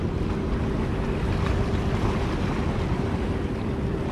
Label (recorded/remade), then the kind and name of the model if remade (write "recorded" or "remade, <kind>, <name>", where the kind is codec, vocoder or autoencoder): recorded